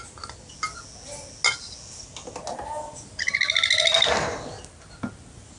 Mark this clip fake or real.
real